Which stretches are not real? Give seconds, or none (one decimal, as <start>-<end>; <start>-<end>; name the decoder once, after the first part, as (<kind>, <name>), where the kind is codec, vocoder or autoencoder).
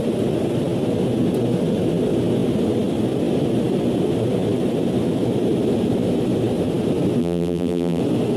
7.2-8.0 (vocoder, BigVGAN v2)